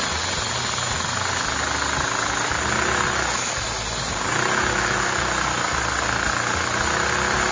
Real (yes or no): yes